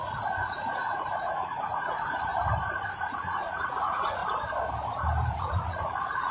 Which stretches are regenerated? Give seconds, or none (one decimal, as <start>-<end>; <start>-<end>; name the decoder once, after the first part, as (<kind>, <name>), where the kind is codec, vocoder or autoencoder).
0.0-2.3 (vocoder, Vocos); 3.0-4.2; 5.4-6.3